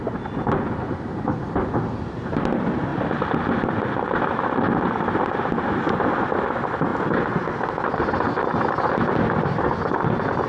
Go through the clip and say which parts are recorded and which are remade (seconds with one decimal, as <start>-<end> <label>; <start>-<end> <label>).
0.0-10.5 recorded